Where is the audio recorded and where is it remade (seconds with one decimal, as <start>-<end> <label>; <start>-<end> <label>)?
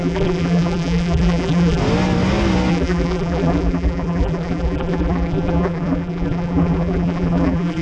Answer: 0.0-1.8 remade; 1.8-2.7 recorded; 2.7-7.8 remade